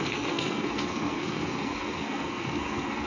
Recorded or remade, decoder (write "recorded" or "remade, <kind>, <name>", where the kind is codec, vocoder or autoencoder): remade, codec, SNAC